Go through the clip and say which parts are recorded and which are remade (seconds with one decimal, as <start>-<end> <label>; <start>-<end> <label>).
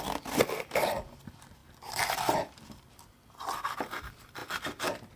0.0-4.4 remade; 4.4-5.2 recorded